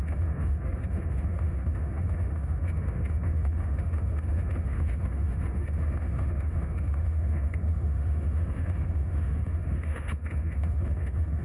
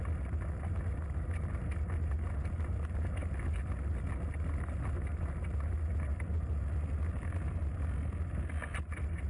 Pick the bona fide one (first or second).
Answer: second